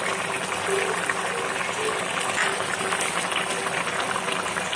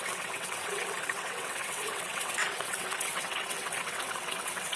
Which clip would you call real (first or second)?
first